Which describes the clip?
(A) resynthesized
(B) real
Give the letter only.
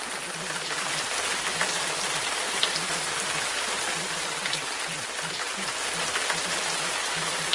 B